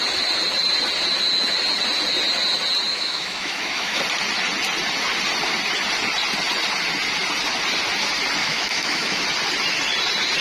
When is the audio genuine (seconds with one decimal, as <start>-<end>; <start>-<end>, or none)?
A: 0.0-2.9; 4.0-8.4; 9.2-10.4